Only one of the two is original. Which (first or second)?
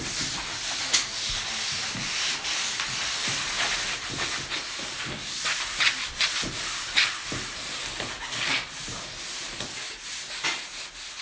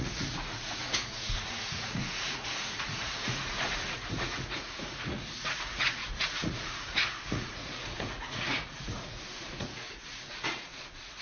first